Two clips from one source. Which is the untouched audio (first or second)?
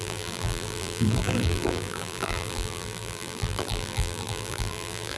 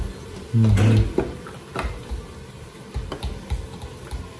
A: second